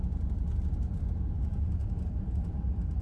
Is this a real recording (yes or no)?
yes